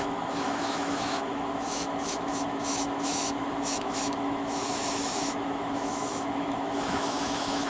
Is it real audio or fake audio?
fake